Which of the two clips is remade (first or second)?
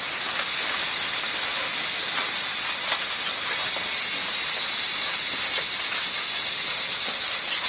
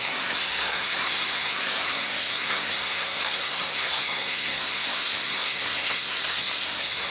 second